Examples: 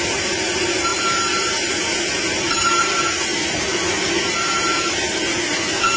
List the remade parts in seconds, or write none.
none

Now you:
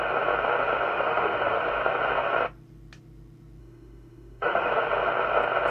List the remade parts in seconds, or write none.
0.9-1.6 (autoencoder, DAC-VAE); 3.6-4.7

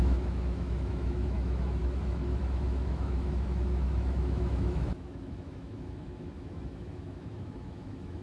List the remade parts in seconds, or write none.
0.0-8.2 (autoencoder, DAC-VAE)

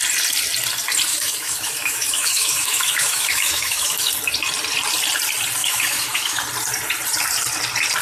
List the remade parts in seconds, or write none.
1.1-4.1 (autoencoder, DAC-VAE); 5.6-6.4

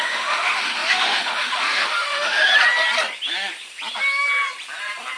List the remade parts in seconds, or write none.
0.0-2.5 (autoencoder, DAC-VAE)